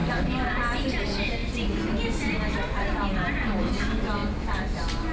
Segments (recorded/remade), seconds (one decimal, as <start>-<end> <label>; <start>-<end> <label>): 0.0-5.1 recorded